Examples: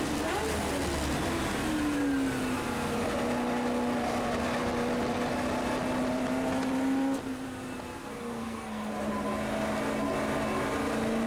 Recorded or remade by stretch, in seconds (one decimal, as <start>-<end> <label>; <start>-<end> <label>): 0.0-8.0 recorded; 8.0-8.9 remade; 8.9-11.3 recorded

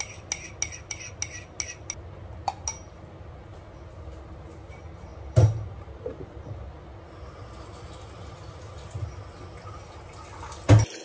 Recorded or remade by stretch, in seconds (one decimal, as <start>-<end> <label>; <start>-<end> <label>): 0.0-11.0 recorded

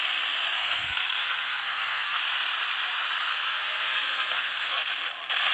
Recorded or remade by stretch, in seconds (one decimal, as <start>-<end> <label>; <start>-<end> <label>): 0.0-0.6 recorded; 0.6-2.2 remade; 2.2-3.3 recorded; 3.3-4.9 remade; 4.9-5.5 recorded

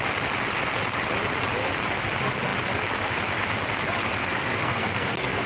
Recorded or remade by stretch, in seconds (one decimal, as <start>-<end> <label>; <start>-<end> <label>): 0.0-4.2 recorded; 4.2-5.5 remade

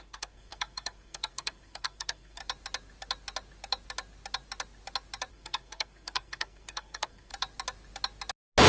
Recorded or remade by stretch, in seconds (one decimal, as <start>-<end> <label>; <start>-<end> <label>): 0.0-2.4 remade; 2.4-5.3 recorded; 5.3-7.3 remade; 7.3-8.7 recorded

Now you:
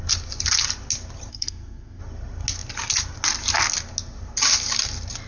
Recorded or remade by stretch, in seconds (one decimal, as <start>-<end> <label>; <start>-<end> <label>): 0.0-1.3 recorded; 1.3-2.0 remade; 2.0-5.3 recorded